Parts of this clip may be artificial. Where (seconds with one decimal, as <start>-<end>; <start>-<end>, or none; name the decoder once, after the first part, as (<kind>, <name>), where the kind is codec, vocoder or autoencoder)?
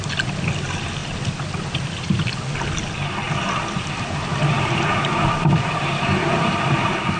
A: none